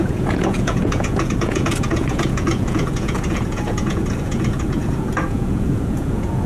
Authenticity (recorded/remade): remade